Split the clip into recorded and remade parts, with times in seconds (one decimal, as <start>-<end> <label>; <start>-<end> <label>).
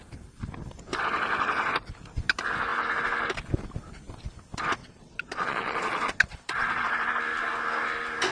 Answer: 0.0-4.8 recorded; 4.8-6.9 remade; 6.9-8.3 recorded